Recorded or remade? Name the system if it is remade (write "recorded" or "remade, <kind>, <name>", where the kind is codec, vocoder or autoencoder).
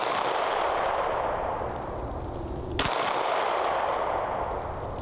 recorded